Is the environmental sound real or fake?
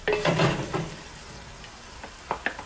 real